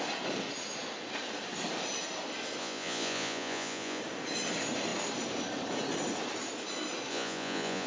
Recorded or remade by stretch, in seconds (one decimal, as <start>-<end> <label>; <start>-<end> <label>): 0.0-2.6 recorded; 2.6-4.0 remade; 4.0-7.1 recorded; 7.1-7.9 remade